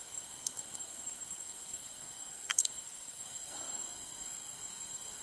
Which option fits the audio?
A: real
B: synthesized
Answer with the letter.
B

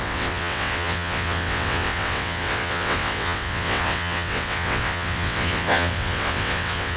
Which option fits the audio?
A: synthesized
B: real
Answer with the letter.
A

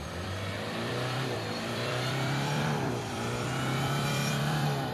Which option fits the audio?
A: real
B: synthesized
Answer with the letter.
B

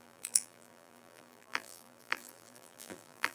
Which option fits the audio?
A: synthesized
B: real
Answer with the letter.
A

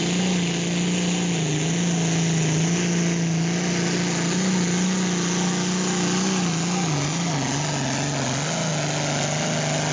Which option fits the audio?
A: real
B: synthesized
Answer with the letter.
A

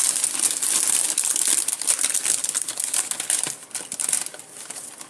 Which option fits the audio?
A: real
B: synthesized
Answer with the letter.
A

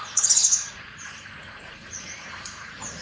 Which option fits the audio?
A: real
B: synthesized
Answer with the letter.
B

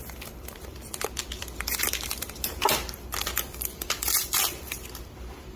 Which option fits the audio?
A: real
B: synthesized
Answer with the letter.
B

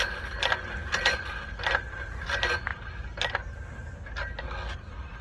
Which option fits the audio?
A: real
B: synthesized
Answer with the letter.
A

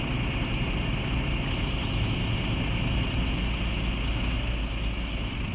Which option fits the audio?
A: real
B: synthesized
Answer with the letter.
A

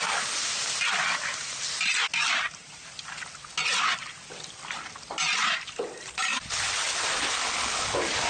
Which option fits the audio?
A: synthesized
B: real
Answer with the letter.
B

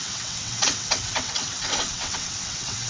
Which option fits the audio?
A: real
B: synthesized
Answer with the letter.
B